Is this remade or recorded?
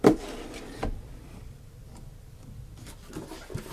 recorded